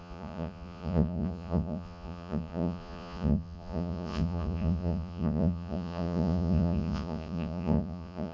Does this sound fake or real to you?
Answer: fake